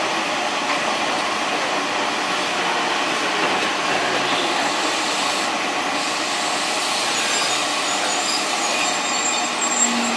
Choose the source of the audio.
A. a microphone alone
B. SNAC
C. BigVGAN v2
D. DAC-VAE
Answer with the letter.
A